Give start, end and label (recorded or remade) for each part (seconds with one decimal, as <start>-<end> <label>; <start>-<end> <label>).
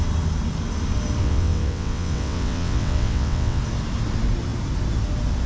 0.0-1.2 recorded; 1.2-3.6 remade; 3.6-5.5 recorded